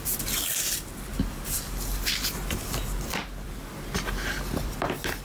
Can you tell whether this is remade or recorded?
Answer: remade